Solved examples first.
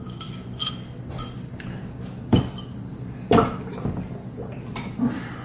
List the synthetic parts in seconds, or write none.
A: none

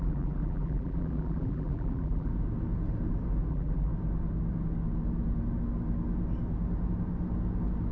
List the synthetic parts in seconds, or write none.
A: 0.0-2.3 (vocoder, BigVGAN v2); 3.5-3.9

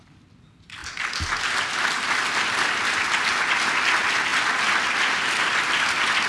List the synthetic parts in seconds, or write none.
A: none

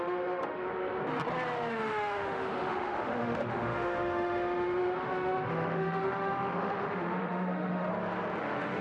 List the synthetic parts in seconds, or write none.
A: 0.0-1.0 (autoencoder, DAC-VAE); 1.7-7.9; 8.4-8.8